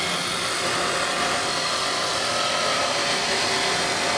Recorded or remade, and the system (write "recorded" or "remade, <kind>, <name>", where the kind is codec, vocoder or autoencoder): recorded